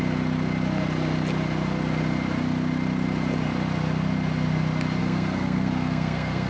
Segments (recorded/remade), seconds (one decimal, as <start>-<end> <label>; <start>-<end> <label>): 0.0-5.0 recorded; 5.0-6.5 remade

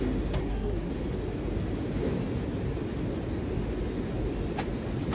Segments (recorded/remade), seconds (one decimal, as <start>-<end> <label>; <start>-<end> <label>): 0.0-0.4 recorded; 0.4-0.9 remade; 0.9-5.1 recorded

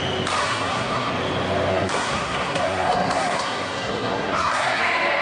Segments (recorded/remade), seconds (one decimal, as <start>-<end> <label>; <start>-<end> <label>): 0.0-0.4 recorded; 0.4-1.1 remade; 1.1-1.7 recorded; 1.7-4.8 remade; 4.8-5.2 recorded

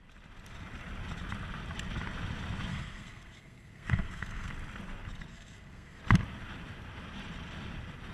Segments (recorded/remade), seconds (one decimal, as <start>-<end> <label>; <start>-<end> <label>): 0.0-2.7 recorded; 2.7-4.5 remade; 4.5-5.3 recorded; 5.3-6.0 remade; 6.0-8.1 recorded

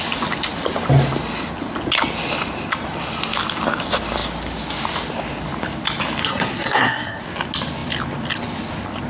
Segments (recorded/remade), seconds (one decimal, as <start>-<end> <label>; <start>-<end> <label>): 0.0-6.2 recorded; 6.2-7.2 remade; 7.2-9.1 recorded

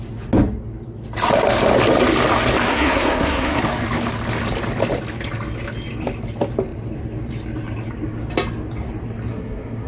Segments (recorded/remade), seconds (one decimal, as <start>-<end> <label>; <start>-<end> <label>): 0.0-2.7 recorded; 2.7-3.6 remade; 3.6-9.3 recorded; 9.3-9.9 remade

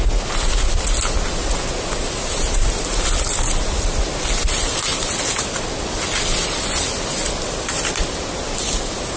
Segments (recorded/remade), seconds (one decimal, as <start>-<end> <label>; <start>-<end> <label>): 0.0-9.2 recorded

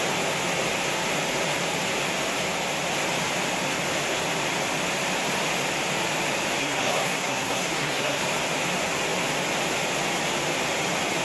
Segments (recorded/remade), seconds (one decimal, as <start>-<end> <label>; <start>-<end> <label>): 0.0-6.6 recorded; 6.6-8.2 remade; 8.2-11.2 recorded